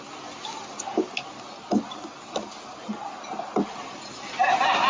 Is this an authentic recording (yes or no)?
yes